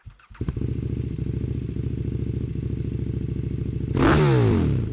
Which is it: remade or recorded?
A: recorded